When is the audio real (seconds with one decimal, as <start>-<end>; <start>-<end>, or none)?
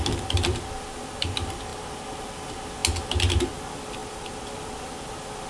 1.7-2.2; 2.8-3.4